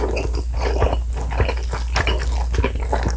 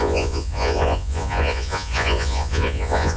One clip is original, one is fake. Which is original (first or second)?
first